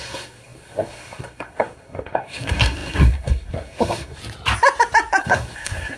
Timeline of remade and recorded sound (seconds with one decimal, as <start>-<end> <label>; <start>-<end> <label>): 0.0-4.2 remade; 4.2-5.2 recorded; 5.2-6.0 remade